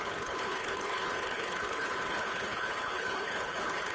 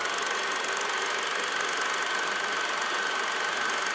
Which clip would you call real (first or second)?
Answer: second